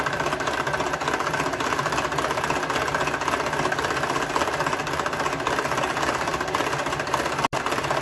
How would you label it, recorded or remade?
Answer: recorded